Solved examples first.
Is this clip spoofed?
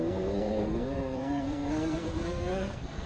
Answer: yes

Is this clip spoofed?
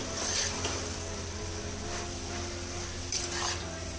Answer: no